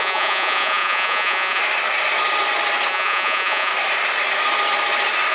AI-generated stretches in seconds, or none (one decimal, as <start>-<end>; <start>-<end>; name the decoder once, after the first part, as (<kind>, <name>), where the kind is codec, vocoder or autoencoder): 0.0-1.6 (vocoder, Vocos); 2.9-3.7